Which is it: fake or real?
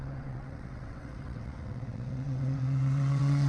fake